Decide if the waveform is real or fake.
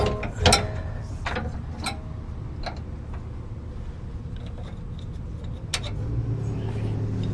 real